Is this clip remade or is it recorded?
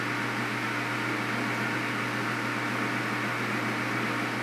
recorded